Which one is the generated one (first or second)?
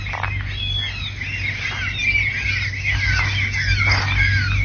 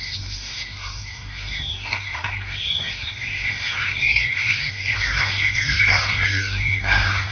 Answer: second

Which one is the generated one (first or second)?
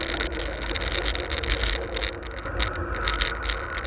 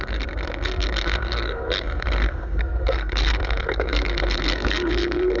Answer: second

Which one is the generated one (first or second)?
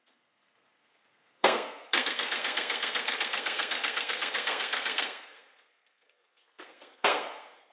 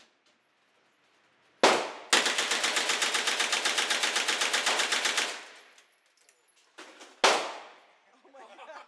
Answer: first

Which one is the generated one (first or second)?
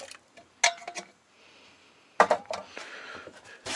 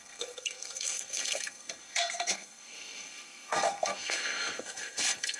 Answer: second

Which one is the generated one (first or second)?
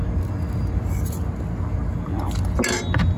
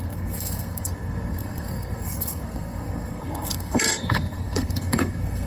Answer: second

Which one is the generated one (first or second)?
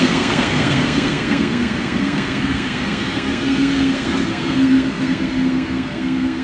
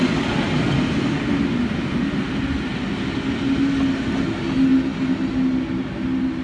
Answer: first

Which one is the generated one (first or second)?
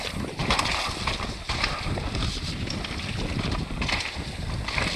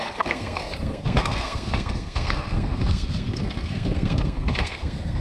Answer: second